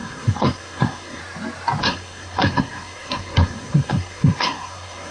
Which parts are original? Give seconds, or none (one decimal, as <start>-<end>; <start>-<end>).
1.2-1.8